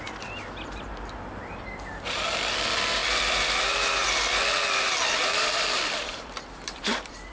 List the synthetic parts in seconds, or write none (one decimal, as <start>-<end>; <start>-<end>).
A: 5.2-7.3